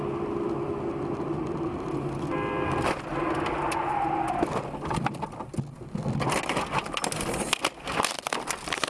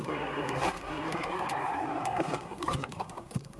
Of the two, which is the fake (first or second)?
second